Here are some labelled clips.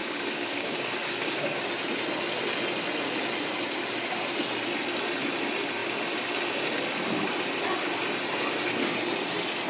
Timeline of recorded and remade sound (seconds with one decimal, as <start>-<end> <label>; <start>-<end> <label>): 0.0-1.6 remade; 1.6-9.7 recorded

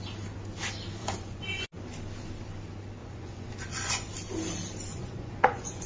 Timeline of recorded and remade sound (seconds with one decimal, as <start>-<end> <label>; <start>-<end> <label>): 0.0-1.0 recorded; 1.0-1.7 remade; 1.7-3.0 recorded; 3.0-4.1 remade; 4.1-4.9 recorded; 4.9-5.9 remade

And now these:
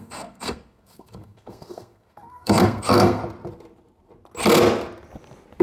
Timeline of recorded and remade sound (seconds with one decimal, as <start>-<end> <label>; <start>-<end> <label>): 0.0-3.2 remade; 3.2-5.6 recorded

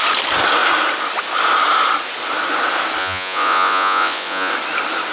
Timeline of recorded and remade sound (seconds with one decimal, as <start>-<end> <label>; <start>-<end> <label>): 0.0-3.0 recorded; 3.0-4.5 remade; 4.5-5.1 recorded

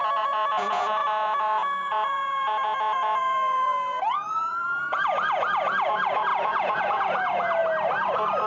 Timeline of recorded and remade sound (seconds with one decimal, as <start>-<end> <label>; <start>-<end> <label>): 0.0-7.6 remade; 7.6-8.5 recorded

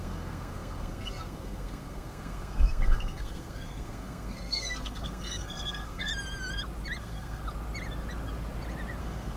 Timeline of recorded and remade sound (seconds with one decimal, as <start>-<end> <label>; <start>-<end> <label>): 0.0-6.1 remade; 6.1-7.0 recorded; 7.0-7.4 remade; 7.4-9.0 recorded; 9.0-9.4 remade